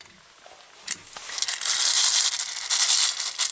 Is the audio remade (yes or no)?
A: no